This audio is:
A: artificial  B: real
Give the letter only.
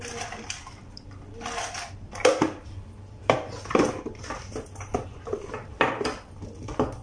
A